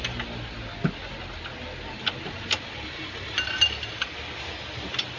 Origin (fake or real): real